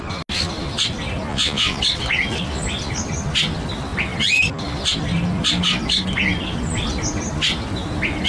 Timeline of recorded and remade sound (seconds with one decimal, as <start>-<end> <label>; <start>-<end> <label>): 0.0-1.3 recorded; 1.3-1.8 remade; 1.8-8.3 recorded